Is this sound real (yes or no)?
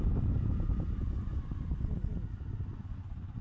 yes